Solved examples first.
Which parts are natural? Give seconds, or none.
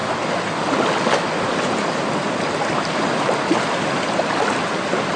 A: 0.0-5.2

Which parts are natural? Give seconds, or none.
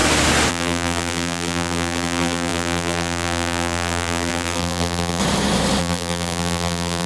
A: 0.0-0.5; 5.2-5.8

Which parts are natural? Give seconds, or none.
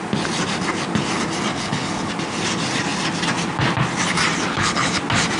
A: 0.0-1.5; 2.1-4.5; 5.0-5.4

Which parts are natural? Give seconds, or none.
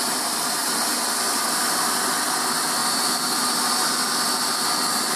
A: 0.0-0.6; 2.0-2.8; 3.7-5.2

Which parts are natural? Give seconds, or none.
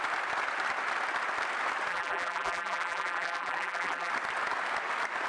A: 0.0-1.9; 4.1-5.3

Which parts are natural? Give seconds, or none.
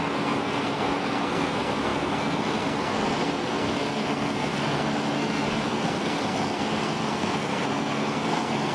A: none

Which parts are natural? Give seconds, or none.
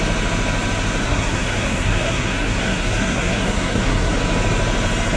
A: 0.0-1.0; 4.1-5.2